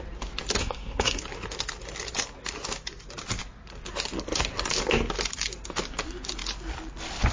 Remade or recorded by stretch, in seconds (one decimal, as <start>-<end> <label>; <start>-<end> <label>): 0.0-0.6 recorded; 0.6-1.2 remade; 1.2-7.3 recorded